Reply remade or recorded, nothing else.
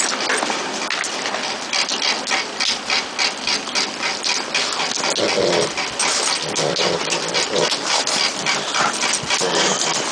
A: recorded